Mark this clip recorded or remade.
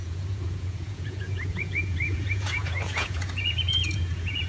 remade